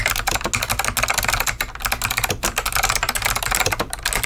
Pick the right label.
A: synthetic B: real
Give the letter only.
B